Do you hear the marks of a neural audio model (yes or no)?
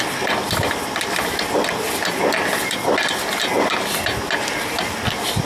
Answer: no